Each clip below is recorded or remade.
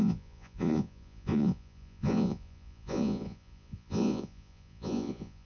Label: remade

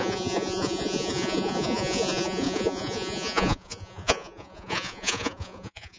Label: remade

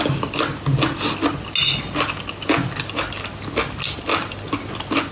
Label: recorded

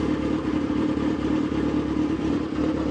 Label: recorded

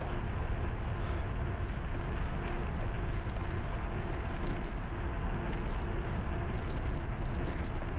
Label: recorded